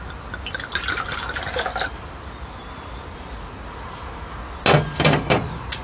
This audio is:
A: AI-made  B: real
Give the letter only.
B